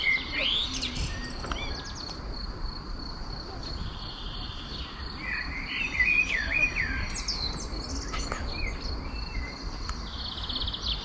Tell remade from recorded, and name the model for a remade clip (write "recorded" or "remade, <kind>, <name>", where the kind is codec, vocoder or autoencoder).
recorded